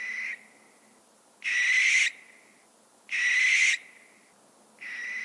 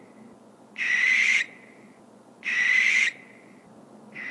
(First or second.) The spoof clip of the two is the second